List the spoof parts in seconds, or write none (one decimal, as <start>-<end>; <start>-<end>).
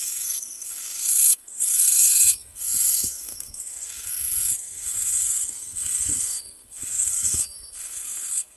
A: 0.0-8.6